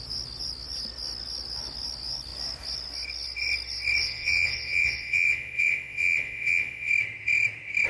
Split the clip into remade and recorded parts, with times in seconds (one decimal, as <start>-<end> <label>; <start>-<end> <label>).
0.0-4.0 recorded; 4.0-6.9 remade; 6.9-7.9 recorded